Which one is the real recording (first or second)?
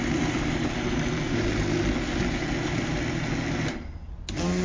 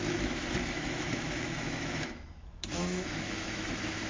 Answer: first